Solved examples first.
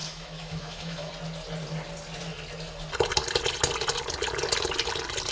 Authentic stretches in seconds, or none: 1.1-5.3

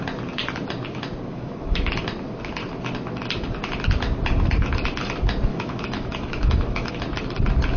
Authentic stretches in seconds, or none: 0.0-1.3; 1.9-5.5; 6.9-7.8